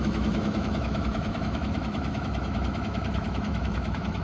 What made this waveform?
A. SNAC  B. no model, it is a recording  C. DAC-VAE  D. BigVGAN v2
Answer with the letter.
C